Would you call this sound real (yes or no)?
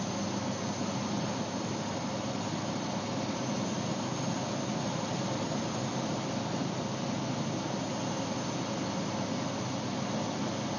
yes